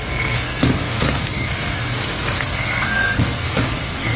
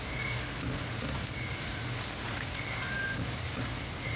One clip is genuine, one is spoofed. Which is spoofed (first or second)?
first